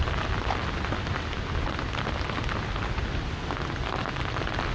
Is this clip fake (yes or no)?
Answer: no